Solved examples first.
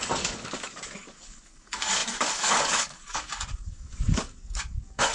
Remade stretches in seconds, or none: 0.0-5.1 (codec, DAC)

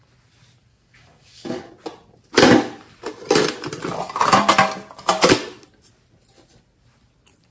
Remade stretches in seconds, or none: 0.7-1.7 (codec, DAC)

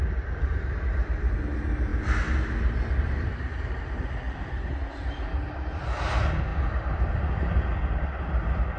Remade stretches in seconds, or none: none

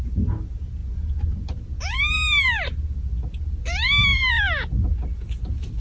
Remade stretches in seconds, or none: none